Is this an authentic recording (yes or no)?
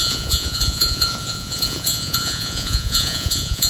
no